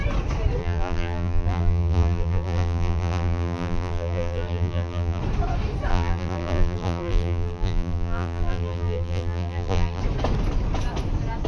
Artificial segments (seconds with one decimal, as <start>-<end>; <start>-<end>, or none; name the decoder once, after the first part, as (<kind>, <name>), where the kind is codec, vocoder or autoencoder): 0.6-5.2 (vocoder, BigVGAN v2); 5.9-10.0